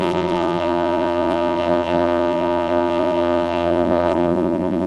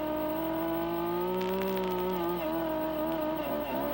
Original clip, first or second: second